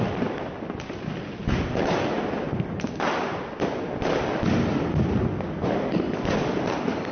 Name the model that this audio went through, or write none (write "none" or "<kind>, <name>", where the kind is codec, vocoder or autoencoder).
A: none